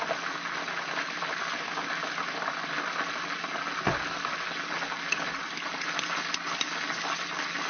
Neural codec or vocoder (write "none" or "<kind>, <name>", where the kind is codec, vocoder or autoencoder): none